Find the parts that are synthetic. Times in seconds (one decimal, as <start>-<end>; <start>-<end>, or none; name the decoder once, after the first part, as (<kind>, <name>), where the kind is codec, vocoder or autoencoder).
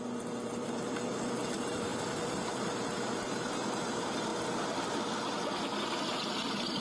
0.0-4.3 (vocoder, BigVGAN v2); 6.0-6.8